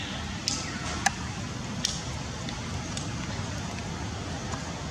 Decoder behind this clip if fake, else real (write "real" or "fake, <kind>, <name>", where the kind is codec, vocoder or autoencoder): real